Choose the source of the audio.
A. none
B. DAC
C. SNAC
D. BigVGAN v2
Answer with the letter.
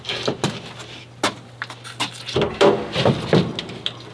A